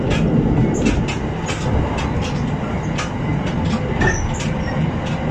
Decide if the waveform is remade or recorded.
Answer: recorded